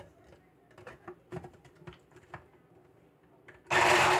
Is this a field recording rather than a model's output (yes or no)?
yes